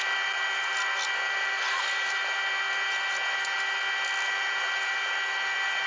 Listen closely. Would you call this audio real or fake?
real